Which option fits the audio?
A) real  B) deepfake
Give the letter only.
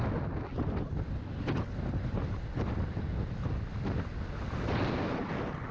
A